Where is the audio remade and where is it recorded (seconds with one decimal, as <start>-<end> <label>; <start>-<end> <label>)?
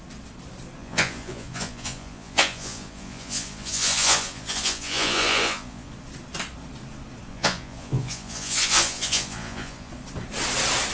0.0-0.8 recorded; 0.8-5.9 remade; 5.9-7.3 recorded; 7.3-9.9 remade; 9.9-10.9 recorded